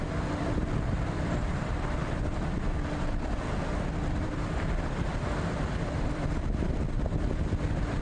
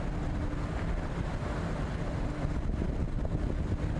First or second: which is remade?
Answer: first